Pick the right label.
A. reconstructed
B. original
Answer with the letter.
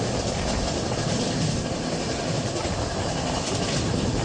B